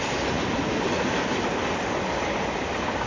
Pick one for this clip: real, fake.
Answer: real